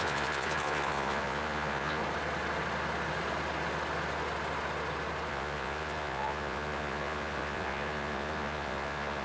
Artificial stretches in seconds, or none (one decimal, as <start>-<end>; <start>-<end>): 0.0-2.0; 5.3-9.2